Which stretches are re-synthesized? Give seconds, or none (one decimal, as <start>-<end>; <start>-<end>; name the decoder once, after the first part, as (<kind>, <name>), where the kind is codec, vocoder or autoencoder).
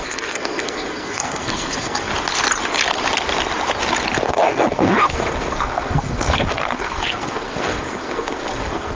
0.0-2.1 (codec, SNAC); 4.3-8.9